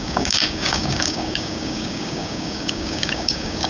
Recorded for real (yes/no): no